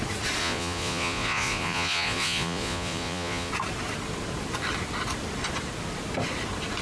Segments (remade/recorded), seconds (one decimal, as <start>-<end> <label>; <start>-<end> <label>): 0.0-0.4 recorded; 0.4-3.5 remade; 3.5-6.8 recorded